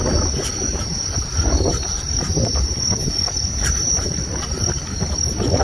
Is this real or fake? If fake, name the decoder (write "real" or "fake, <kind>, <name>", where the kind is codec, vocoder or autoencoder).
real